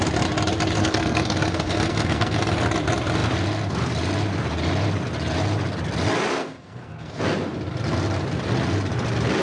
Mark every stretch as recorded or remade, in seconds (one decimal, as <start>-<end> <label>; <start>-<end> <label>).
0.0-0.8 recorded; 0.8-2.4 remade; 2.4-6.4 recorded; 6.4-7.2 remade; 7.2-9.4 recorded